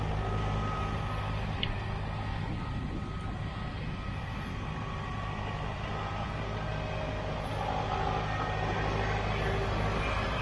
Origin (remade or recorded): recorded